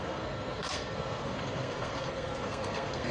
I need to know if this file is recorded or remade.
remade